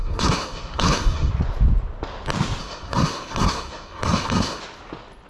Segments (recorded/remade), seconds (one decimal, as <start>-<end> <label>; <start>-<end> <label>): 0.0-1.3 remade; 1.3-2.6 recorded; 2.6-4.6 remade; 4.6-5.3 recorded